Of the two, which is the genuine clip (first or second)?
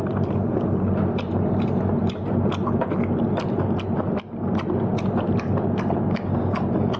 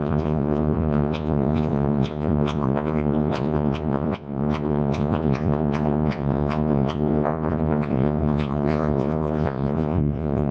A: first